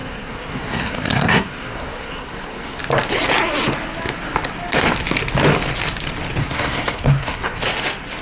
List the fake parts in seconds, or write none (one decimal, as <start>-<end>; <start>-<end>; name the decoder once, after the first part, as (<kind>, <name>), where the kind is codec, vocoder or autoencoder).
0.0-2.8 (codec, SNAC); 6.4-7.6